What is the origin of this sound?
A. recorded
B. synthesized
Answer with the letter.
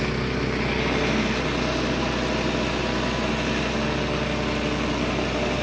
A